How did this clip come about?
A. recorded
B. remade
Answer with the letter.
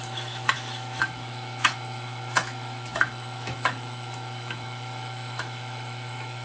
B